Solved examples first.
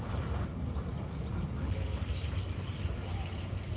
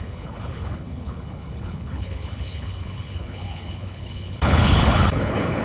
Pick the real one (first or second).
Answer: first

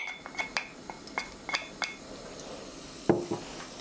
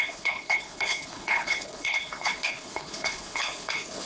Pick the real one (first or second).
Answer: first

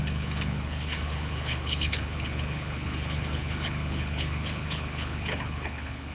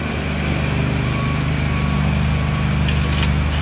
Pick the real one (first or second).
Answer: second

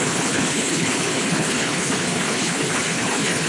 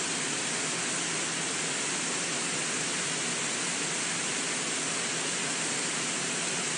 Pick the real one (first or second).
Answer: second